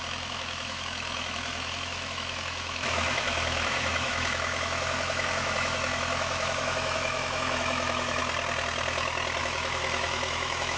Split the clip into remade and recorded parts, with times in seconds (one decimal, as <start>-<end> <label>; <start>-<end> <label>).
0.0-8.2 remade; 8.2-9.4 recorded; 9.4-10.8 remade